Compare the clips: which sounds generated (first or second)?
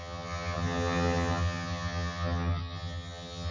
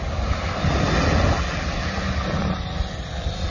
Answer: first